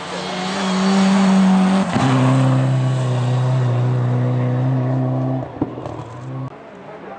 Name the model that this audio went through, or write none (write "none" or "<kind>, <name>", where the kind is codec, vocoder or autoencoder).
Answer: none